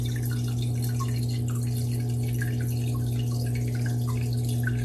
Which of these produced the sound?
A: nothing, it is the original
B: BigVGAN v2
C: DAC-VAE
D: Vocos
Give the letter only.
A